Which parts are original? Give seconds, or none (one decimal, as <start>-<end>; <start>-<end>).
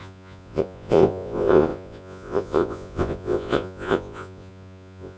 none